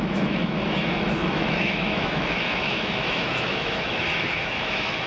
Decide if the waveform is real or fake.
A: fake